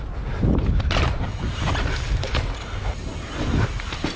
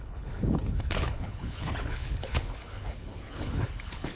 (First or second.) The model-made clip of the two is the second